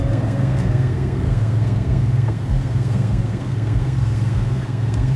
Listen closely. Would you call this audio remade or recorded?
remade